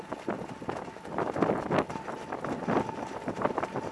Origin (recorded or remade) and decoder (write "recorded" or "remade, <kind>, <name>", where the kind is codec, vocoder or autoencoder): recorded